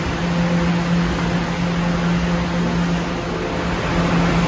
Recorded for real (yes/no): yes